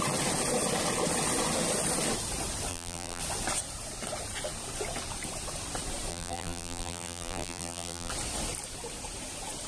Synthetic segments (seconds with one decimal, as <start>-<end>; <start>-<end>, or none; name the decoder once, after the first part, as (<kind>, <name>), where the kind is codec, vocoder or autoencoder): 2.7-3.2 (vocoder, BigVGAN v2); 6.1-8.1